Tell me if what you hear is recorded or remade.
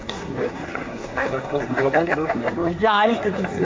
remade